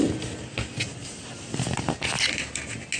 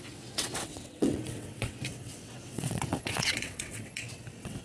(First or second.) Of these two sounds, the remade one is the second